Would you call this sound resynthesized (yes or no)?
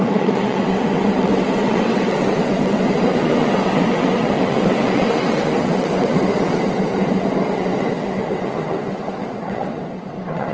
yes